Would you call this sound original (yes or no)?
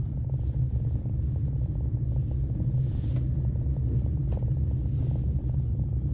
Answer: yes